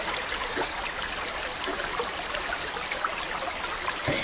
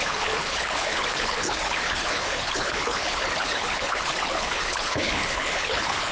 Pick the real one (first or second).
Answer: first